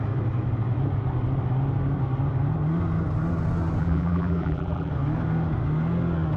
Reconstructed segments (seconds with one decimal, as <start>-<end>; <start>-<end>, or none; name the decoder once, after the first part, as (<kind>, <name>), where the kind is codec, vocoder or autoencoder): 3.8-4.9 (vocoder, BigVGAN v2)